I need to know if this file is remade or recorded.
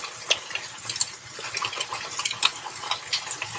recorded